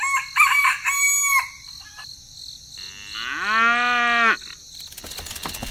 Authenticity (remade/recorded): recorded